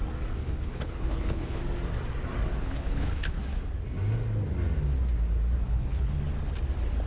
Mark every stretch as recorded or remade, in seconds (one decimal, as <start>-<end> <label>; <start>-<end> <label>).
0.0-0.4 recorded; 0.4-1.6 remade; 1.6-2.6 recorded; 2.6-3.4 remade; 3.4-5.7 recorded; 5.7-6.2 remade; 6.2-7.1 recorded